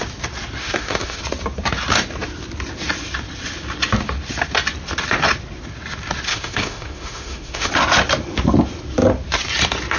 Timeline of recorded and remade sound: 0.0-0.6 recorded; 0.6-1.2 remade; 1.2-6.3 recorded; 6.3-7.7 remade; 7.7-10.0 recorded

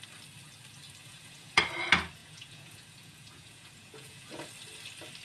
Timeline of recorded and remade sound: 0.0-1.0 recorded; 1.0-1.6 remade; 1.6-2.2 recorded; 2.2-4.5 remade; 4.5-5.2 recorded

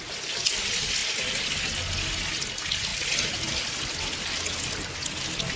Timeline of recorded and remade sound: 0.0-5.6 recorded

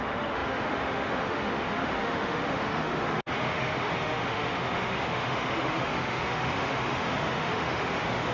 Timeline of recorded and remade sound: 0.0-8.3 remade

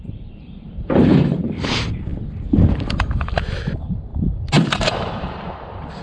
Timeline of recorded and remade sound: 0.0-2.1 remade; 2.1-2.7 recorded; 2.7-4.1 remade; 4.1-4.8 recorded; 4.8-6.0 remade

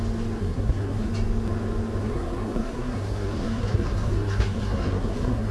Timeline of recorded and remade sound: 0.0-0.4 recorded; 0.4-1.1 remade; 1.1-2.0 recorded; 2.0-5.5 remade

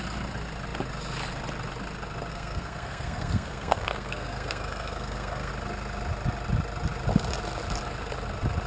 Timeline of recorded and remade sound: 0.0-2.3 recorded; 2.3-5.5 remade; 5.5-8.7 recorded

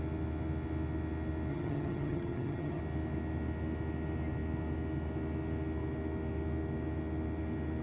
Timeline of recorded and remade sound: 0.0-1.5 recorded; 1.5-2.8 remade; 2.8-7.8 recorded